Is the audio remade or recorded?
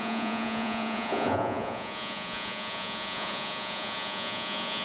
remade